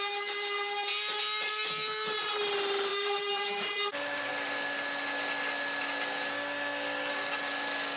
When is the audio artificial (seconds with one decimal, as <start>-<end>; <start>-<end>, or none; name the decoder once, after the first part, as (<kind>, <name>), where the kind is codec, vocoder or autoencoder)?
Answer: 2.9-4.3 (vocoder, BigVGAN v2)